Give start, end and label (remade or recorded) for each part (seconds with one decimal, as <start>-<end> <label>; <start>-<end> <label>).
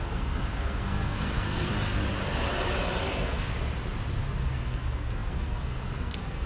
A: 0.0-1.7 remade; 1.7-3.1 recorded; 3.1-3.5 remade; 3.5-4.2 recorded; 4.2-6.5 remade